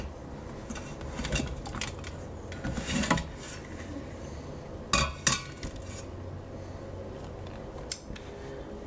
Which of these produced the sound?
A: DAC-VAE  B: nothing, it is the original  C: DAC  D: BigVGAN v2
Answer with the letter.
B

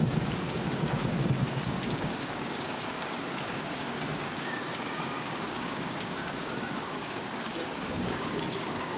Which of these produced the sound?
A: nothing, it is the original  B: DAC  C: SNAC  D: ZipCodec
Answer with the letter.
B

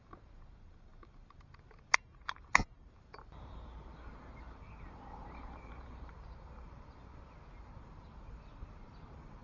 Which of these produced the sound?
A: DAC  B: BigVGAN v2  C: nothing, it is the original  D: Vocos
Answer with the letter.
B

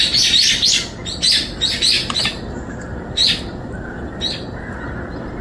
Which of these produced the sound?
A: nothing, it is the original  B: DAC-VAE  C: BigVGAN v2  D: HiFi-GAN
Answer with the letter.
A